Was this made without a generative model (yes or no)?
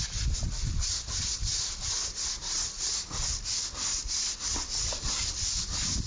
yes